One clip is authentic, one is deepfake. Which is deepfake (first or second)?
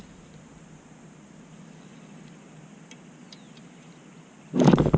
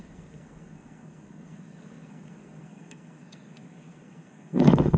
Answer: second